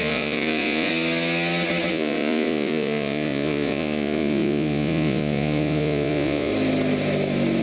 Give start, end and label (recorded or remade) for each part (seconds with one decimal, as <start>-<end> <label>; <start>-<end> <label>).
0.0-0.9 remade; 0.9-1.9 recorded; 1.9-6.5 remade; 6.5-7.6 recorded